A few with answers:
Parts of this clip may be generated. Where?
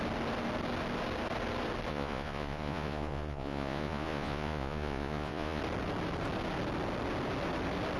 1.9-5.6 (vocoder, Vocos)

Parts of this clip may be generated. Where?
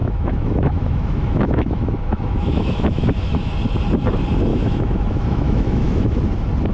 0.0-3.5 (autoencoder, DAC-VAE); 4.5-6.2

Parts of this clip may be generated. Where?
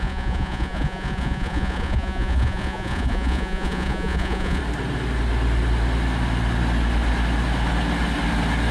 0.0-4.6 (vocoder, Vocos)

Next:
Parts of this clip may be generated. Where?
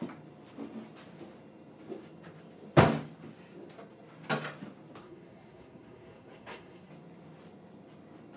5.0-6.9 (codec, SNAC)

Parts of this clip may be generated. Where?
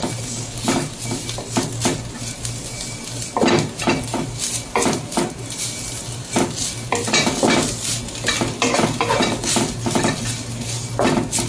none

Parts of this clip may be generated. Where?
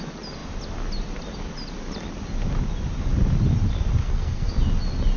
4.0-4.5 (codec, SNAC)